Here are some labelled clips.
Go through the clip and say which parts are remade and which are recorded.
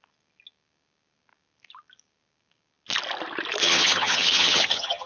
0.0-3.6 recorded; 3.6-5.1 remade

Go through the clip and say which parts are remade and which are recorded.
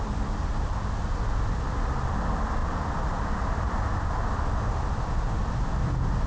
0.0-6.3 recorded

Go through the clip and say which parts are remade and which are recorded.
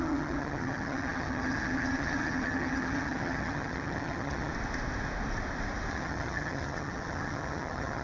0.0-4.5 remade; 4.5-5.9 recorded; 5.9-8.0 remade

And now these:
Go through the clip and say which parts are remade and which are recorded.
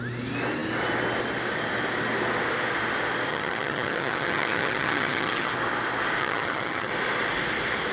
0.0-3.3 recorded; 3.3-5.5 remade; 5.5-6.2 recorded; 6.2-6.9 remade; 6.9-7.9 recorded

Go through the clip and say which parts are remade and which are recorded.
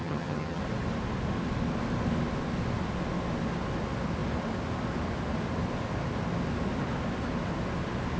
0.0-0.6 remade; 0.6-8.2 recorded